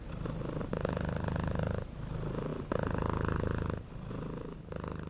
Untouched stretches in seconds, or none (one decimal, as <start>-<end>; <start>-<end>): 0.0-5.1